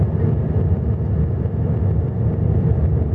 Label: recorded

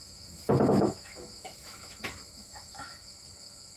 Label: remade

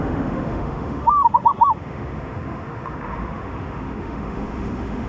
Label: remade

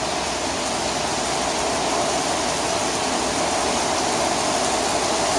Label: recorded